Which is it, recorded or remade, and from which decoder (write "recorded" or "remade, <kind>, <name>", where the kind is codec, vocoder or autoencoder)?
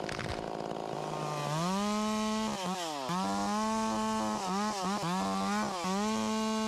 recorded